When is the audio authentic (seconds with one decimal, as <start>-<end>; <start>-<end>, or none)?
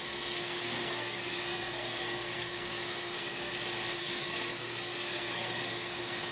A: 3.5-4.0